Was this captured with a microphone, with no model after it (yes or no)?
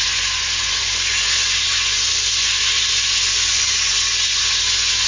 no